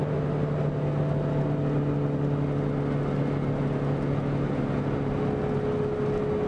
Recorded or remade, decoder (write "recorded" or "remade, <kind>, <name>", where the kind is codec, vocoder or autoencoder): recorded